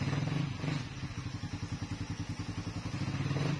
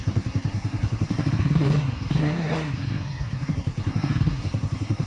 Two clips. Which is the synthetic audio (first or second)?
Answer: second